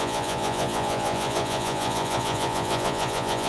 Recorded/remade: remade